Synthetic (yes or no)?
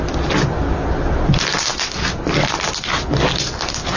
no